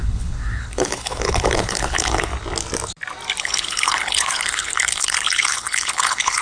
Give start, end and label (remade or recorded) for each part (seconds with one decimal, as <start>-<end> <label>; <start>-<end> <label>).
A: 0.0-2.3 remade; 2.3-3.4 recorded; 3.4-6.4 remade